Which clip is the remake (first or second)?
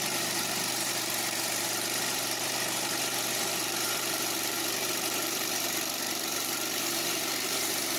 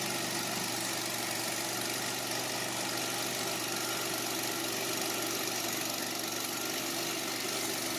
first